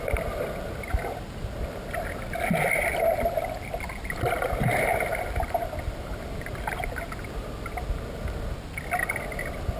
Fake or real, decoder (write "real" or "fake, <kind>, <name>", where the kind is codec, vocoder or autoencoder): real